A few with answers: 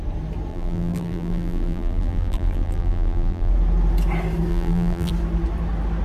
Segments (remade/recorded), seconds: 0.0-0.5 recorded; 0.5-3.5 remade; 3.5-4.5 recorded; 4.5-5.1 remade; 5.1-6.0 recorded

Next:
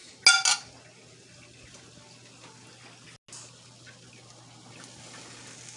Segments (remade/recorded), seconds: 0.0-5.8 recorded

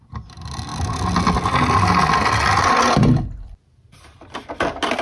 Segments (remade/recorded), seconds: 0.0-5.0 recorded